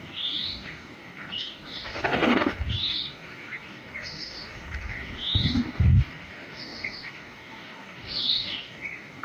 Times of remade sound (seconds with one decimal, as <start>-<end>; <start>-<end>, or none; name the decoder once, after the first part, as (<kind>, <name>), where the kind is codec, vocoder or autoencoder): 0.0-9.2 (codec, DAC)